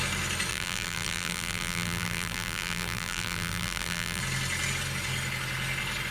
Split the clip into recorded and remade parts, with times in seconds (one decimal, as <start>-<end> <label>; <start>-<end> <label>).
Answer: 0.0-0.5 recorded; 0.5-4.2 remade; 4.2-6.1 recorded